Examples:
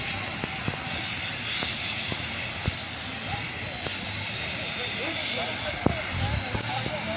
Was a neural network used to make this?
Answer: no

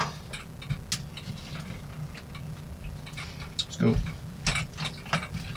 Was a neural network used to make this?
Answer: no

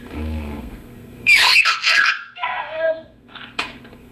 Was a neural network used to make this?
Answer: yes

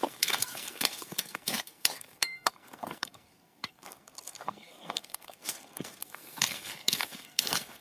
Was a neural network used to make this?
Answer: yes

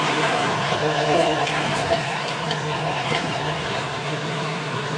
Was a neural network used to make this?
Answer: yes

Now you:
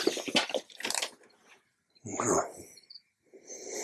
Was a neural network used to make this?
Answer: no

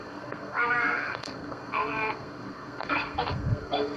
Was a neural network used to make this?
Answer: yes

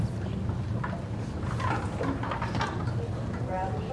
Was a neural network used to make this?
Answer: no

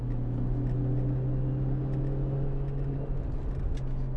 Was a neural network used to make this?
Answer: no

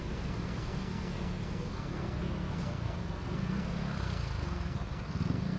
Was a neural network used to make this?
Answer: yes